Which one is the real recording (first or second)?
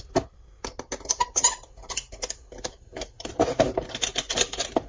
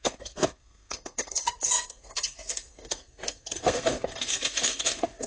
first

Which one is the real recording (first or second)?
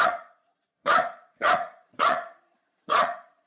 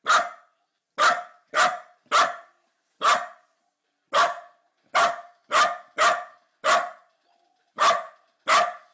second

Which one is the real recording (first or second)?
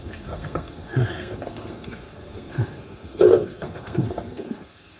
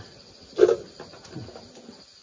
second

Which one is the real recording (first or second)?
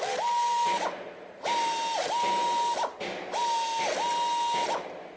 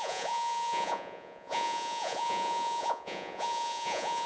first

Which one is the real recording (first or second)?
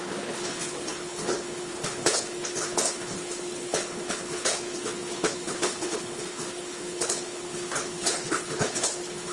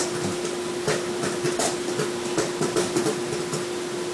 second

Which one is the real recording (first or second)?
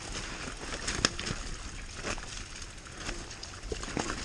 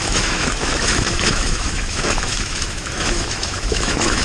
first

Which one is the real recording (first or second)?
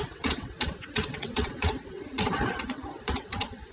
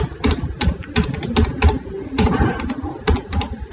second